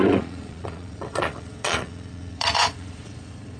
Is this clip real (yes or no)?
no